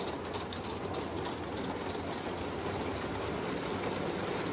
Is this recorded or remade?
recorded